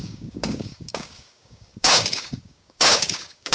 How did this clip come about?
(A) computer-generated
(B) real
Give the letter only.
A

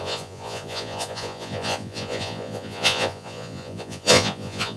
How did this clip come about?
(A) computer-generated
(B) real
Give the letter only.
A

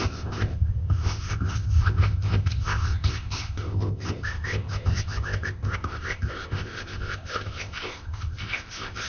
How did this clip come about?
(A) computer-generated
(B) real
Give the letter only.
A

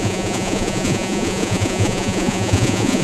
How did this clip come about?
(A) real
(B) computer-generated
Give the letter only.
B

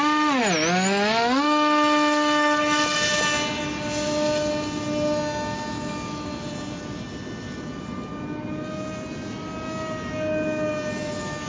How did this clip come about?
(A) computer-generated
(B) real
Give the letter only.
B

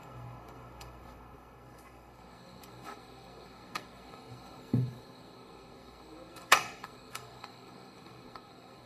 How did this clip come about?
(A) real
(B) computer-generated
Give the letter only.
B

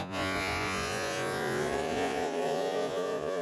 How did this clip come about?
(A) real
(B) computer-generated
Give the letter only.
B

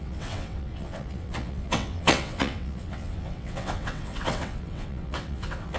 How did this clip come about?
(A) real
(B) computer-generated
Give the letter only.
B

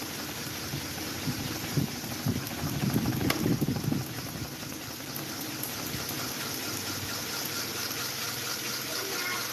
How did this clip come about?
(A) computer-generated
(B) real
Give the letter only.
B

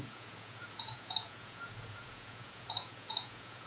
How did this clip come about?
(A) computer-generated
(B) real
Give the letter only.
A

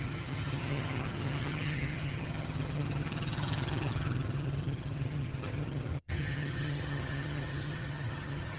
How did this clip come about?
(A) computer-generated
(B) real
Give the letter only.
A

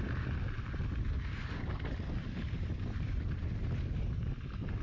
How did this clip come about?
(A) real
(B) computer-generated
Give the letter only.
A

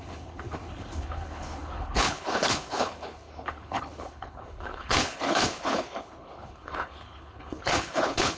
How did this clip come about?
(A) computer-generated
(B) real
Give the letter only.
A